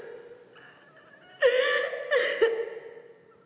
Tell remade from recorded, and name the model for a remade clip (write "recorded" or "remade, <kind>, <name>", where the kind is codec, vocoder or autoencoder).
recorded